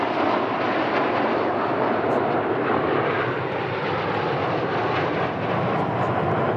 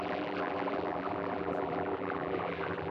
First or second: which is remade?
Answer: second